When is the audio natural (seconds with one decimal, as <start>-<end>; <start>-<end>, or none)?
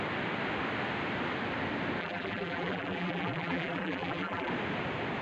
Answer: 0.0-2.0; 4.5-5.2